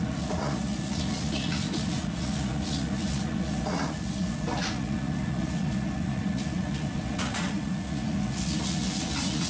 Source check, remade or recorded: remade